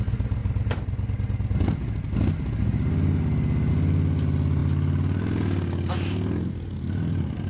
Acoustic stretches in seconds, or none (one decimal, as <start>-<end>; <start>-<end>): 0.0-7.5

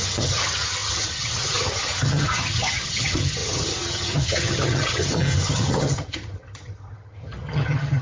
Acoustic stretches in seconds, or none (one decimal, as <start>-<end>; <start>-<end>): none

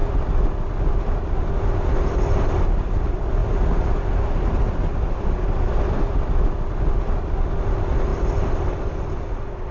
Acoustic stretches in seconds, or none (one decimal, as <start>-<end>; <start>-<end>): 0.0-9.7

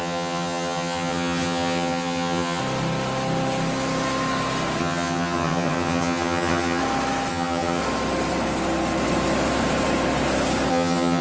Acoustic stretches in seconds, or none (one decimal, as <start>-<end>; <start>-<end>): 2.6-4.8; 6.8-7.3; 7.8-10.7

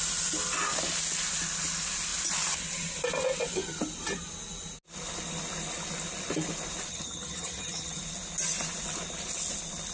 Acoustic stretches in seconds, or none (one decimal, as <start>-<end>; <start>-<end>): 0.0-6.9; 8.0-9.9